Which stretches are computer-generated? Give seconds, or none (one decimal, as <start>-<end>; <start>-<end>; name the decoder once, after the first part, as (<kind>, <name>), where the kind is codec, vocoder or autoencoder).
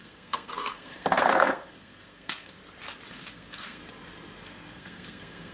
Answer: 0.0-2.6 (codec, SNAC); 3.1-3.8; 4.4-5.5